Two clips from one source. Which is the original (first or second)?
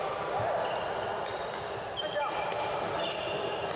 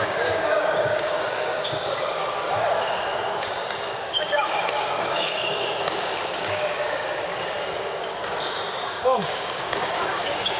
first